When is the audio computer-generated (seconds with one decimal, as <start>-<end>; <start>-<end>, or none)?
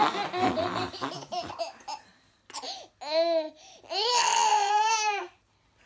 4.5-5.5